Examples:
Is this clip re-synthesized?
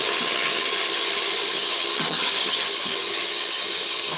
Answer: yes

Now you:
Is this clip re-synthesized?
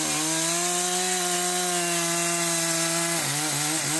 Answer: no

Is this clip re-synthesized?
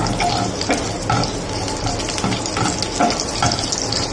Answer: no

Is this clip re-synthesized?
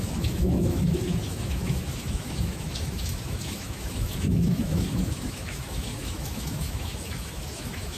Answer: yes